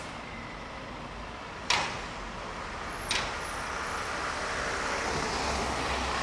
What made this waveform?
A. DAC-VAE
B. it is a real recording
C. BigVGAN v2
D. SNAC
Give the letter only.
B